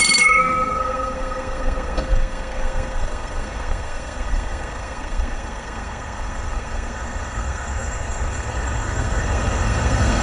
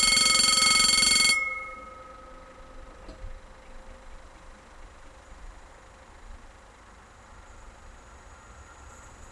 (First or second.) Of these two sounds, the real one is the second